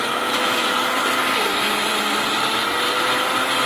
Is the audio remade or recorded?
recorded